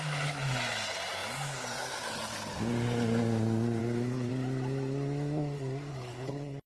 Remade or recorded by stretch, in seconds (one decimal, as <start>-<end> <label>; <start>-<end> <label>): 0.0-3.8 recorded; 3.8-4.3 remade; 4.3-5.9 recorded; 5.9-6.7 remade